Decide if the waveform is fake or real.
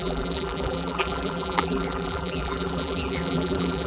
fake